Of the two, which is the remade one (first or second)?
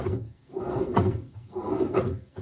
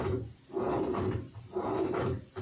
first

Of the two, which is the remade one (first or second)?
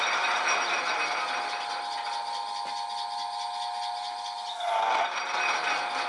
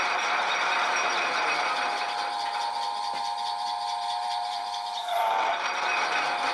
second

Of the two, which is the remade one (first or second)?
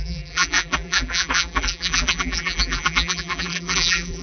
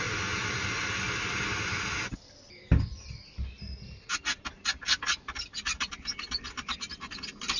first